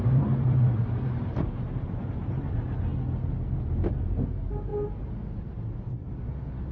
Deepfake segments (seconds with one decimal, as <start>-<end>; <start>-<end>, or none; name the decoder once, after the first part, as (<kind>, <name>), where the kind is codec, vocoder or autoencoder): 0.0-2.9 (vocoder, BigVGAN v2); 3.9-4.7; 5.9-6.7